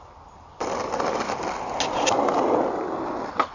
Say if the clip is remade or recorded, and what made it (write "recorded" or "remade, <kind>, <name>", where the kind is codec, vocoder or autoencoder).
recorded